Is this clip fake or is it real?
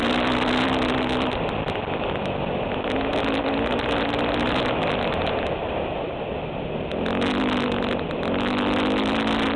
real